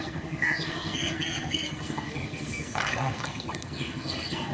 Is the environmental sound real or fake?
fake